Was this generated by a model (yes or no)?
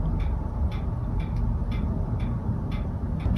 no